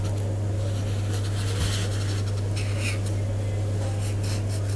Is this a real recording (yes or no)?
yes